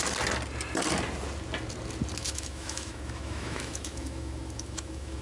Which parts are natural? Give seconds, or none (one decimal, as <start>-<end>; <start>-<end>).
0.0-2.2